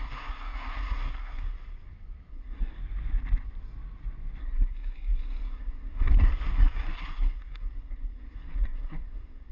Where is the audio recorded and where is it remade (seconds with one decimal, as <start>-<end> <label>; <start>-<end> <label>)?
0.0-1.5 remade; 1.5-2.3 recorded; 2.3-2.8 remade; 2.8-4.4 recorded; 4.4-9.5 remade